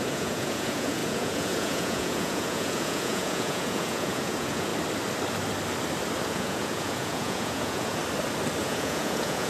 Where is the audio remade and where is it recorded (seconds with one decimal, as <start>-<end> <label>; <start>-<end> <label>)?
0.0-4.7 remade; 4.7-6.3 recorded; 6.3-8.0 remade; 8.0-8.6 recorded; 8.6-9.5 remade